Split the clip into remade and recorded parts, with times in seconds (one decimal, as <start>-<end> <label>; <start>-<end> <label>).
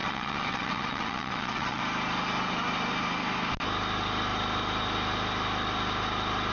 0.0-1.8 remade; 1.8-6.5 recorded